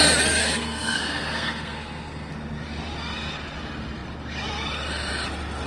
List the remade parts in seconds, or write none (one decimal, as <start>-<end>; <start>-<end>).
0.4-2.3